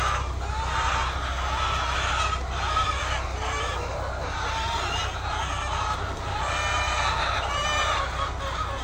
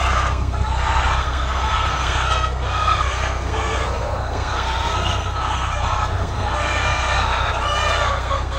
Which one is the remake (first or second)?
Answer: second